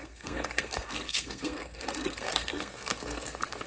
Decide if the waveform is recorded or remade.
remade